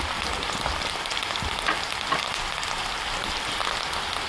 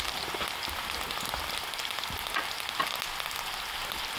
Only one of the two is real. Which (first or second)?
second